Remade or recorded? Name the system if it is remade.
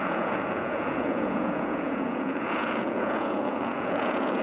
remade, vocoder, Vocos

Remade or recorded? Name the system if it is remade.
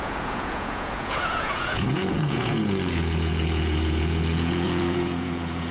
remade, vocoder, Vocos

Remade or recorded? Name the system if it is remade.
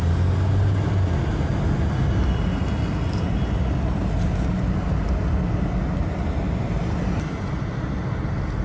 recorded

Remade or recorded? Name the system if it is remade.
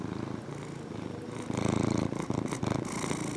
recorded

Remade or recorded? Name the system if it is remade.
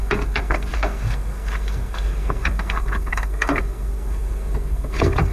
remade, codec, SNAC